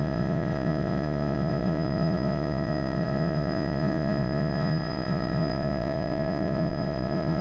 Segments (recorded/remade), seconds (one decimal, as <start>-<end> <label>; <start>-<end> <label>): 0.0-7.4 remade